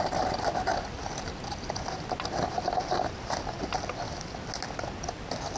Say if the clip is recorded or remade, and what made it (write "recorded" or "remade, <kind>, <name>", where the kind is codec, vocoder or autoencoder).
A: recorded